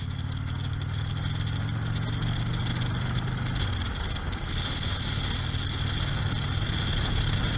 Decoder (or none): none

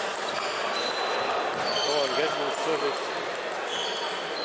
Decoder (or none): none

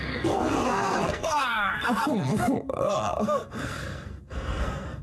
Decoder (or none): codec, SNAC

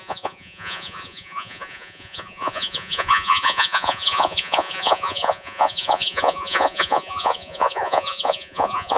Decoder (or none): vocoder, Vocos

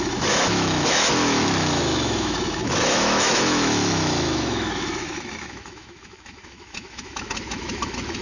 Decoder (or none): autoencoder, DAC-VAE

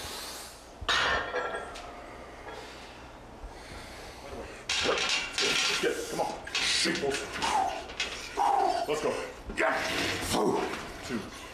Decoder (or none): none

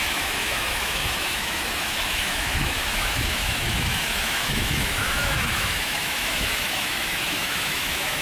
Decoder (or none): autoencoder, DAC-VAE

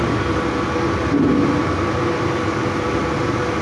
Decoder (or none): none